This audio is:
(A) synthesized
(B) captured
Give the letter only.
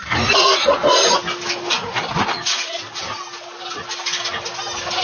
B